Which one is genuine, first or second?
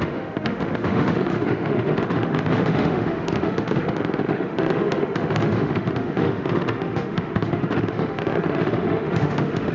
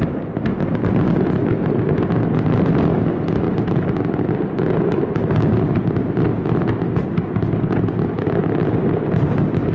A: second